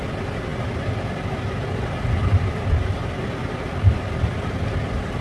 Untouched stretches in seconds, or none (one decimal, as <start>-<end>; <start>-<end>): 0.0-5.2